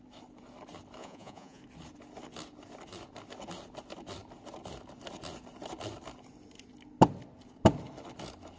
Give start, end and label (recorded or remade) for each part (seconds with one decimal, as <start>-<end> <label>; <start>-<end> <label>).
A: 0.0-1.0 recorded; 1.0-1.6 remade; 1.6-8.6 recorded